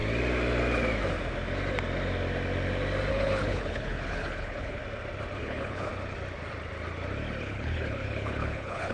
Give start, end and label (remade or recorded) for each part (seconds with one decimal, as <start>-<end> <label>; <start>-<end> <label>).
0.0-3.1 recorded; 3.1-4.8 remade; 4.8-5.4 recorded; 5.4-5.9 remade; 5.9-7.4 recorded; 7.4-8.9 remade